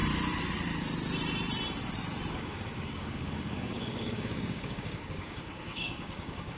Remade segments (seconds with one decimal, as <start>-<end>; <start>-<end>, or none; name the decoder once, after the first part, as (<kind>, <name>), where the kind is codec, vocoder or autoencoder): 2.3-6.6 (codec, DAC)